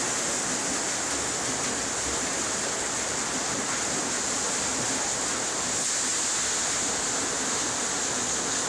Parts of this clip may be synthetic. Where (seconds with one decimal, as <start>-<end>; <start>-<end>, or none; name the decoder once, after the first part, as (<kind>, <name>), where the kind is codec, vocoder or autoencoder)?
none